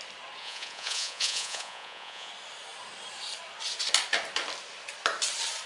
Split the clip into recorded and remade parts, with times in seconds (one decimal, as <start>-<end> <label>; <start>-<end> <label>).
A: 0.0-0.4 recorded; 0.4-2.3 remade; 2.3-5.7 recorded